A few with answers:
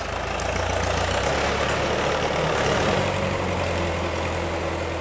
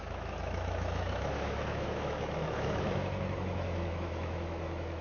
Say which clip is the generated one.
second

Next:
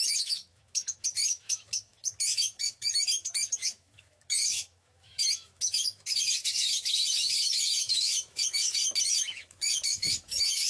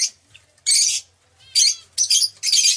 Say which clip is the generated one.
first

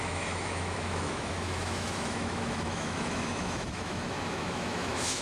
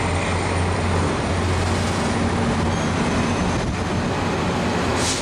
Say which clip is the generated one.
first